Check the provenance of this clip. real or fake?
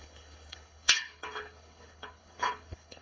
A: fake